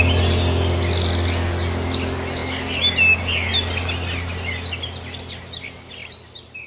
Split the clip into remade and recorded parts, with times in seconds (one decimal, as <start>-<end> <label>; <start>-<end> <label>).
0.0-6.0 recorded; 6.0-6.7 remade